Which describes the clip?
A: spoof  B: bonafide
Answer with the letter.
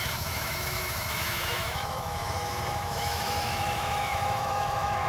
A